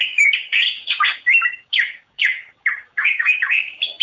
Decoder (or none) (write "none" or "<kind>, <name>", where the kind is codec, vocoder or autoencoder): codec, DAC